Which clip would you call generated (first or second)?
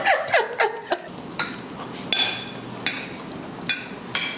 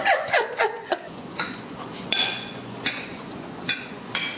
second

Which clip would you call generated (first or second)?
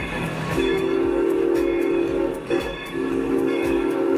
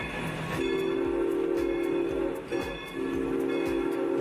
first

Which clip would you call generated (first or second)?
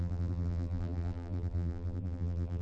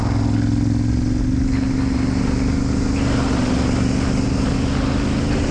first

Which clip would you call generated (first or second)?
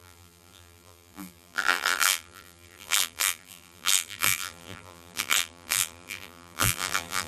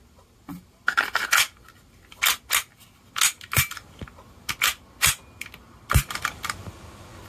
first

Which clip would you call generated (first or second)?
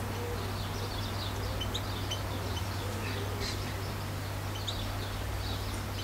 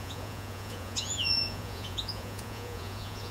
second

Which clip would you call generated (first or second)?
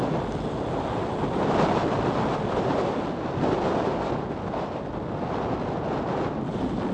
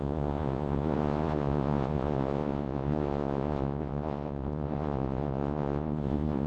second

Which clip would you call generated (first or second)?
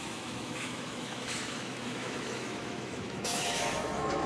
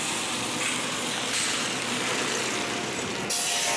first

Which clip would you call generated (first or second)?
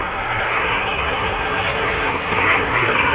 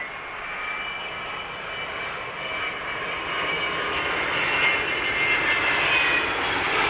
first